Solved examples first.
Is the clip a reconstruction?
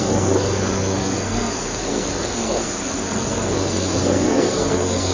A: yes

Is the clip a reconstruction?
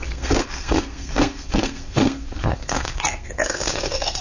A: yes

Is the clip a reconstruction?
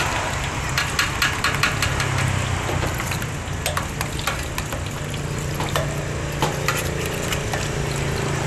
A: no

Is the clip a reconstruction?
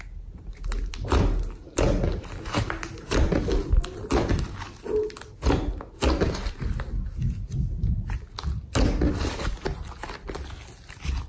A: no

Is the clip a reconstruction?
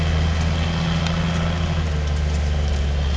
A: no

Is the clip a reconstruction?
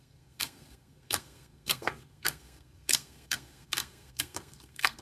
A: yes